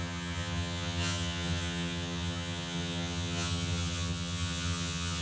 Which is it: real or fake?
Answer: fake